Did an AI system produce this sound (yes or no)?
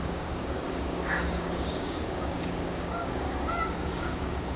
yes